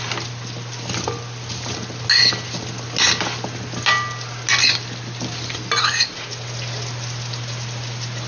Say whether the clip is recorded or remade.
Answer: recorded